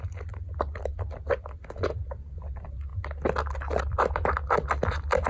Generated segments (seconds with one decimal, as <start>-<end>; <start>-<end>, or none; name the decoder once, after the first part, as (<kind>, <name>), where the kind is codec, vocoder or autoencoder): 0.0-2.9 (vocoder, BigVGAN v2); 3.8-5.3